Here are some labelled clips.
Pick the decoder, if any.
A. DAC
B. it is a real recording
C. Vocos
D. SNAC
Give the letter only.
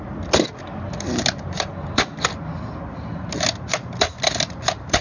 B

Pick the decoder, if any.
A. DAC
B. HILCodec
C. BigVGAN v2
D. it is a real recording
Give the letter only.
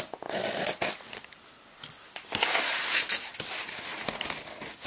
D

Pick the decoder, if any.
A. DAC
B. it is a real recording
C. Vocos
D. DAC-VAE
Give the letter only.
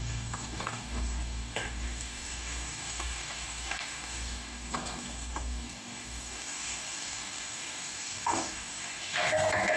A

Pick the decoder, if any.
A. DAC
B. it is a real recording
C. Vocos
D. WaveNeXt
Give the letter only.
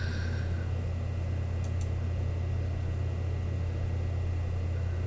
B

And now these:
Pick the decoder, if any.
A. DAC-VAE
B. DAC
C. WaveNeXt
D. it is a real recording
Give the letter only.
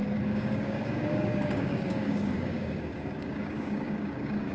B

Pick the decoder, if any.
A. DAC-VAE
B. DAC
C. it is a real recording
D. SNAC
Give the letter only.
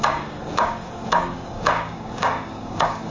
B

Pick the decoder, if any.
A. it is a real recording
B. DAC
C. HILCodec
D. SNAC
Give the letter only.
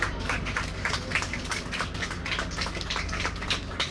B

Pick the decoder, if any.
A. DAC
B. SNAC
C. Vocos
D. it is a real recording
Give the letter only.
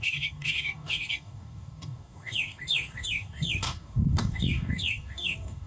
A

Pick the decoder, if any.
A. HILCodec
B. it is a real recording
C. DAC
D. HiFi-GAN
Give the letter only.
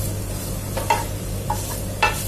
B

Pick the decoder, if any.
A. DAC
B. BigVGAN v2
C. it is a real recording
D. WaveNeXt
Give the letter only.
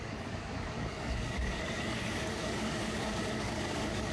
A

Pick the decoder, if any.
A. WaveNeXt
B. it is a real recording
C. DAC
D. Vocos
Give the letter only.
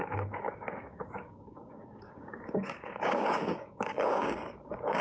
C